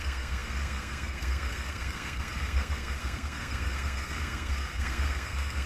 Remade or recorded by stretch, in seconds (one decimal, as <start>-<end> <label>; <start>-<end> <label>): 0.0-5.7 remade

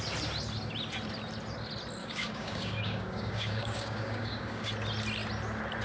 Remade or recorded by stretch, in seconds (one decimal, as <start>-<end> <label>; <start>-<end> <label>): 0.0-2.0 recorded; 2.0-4.7 remade; 4.7-5.8 recorded

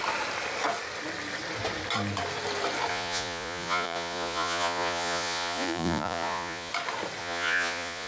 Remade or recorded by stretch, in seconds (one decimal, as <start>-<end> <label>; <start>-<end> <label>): 0.0-2.9 recorded; 2.9-6.7 remade; 6.7-7.2 recorded; 7.2-8.1 remade

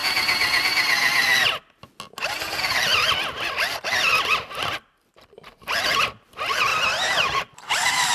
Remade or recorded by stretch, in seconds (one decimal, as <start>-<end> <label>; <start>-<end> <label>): 0.0-6.7 recorded; 6.7-8.1 remade